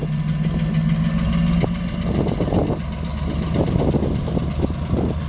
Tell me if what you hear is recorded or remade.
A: recorded